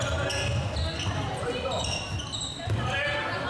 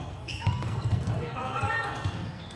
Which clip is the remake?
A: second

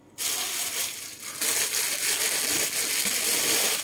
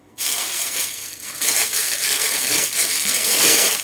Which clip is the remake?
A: second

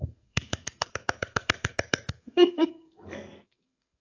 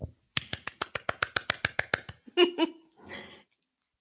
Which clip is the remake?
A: first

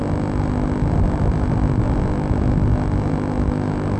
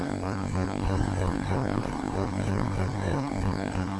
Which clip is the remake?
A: second